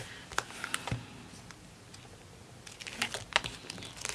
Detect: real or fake real